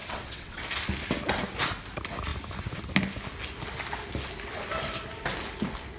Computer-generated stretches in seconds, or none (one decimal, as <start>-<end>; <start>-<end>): 0.0-0.6

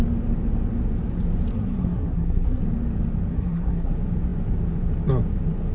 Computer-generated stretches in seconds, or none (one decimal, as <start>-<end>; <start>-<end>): 1.5-2.6; 3.3-3.9

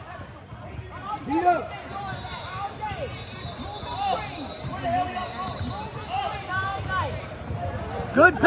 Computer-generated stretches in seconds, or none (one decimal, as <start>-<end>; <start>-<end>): 0.0-3.1; 5.8-6.7; 7.2-8.5

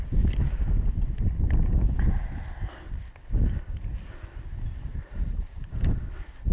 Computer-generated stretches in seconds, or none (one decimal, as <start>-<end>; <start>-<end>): 4.9-6.1

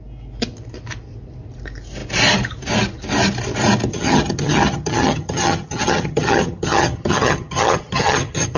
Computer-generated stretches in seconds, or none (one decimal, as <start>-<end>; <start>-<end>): 3.9-8.6

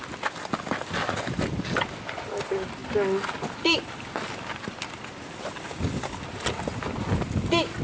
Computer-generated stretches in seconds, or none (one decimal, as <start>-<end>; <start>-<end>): none

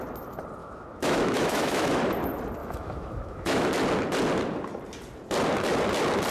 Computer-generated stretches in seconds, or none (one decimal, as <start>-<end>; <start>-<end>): 0.6-2.0; 2.6-3.7

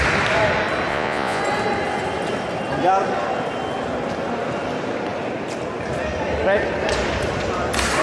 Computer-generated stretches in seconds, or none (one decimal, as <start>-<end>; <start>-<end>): 0.9-1.4